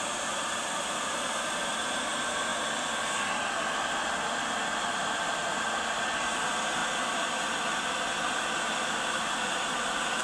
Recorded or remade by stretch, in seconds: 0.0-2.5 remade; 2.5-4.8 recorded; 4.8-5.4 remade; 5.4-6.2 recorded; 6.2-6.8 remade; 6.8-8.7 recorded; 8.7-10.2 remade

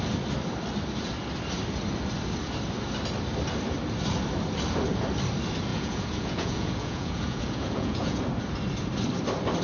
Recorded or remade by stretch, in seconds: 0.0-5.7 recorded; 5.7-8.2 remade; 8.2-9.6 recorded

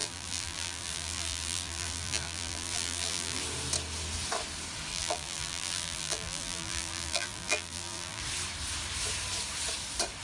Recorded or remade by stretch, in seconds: 0.0-3.4 remade; 3.4-4.9 recorded; 4.9-8.2 remade; 8.2-10.2 recorded

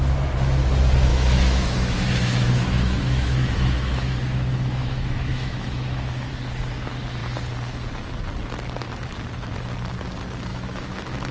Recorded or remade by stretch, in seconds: 0.0-1.1 recorded; 1.1-6.3 remade; 6.3-10.5 recorded; 10.5-11.3 remade